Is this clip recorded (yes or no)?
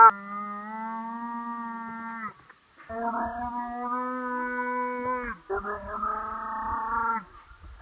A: yes